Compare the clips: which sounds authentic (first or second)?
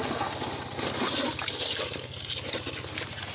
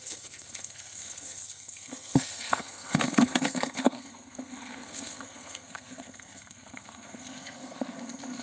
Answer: first